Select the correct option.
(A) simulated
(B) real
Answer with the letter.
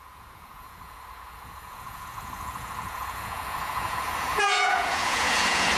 A